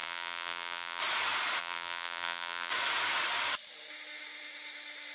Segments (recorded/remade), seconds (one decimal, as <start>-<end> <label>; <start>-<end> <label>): 0.0-1.0 remade; 1.0-1.6 recorded; 1.6-2.7 remade; 2.7-5.1 recorded

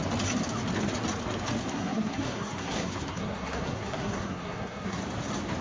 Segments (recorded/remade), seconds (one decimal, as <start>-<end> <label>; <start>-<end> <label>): 0.0-1.6 recorded; 1.6-5.0 remade; 5.0-5.6 recorded